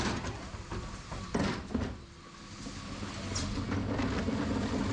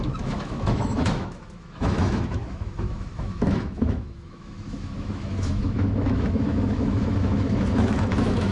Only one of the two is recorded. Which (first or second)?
first